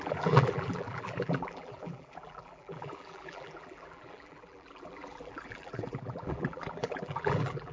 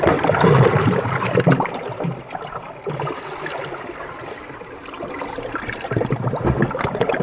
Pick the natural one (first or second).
second